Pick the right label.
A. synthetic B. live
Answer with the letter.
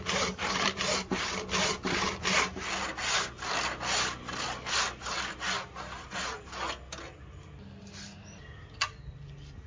B